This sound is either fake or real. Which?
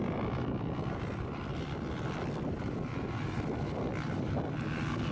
real